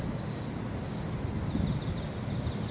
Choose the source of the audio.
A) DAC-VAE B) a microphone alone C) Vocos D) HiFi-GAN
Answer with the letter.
B